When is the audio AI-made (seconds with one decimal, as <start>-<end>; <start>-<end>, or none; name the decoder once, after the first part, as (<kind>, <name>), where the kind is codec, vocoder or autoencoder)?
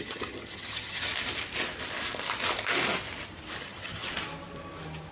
0.0-1.1 (vocoder, HiFi-GAN); 3.6-4.1